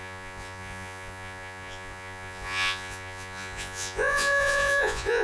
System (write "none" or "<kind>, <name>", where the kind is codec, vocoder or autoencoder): vocoder, Vocos